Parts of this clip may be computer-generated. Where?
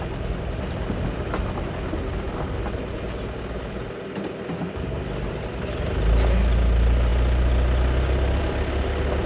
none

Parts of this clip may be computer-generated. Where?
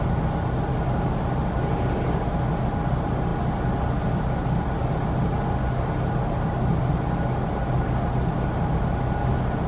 none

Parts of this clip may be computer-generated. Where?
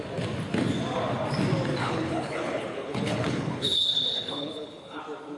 1.8-5.0